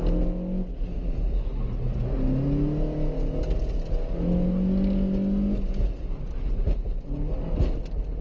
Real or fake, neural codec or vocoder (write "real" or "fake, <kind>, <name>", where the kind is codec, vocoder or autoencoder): real